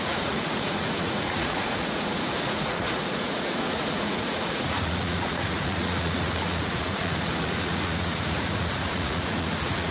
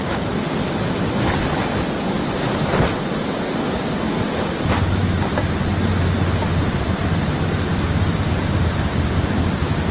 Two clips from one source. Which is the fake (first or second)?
first